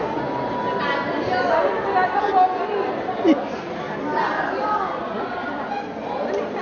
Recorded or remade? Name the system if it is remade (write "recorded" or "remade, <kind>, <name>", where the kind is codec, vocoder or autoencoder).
recorded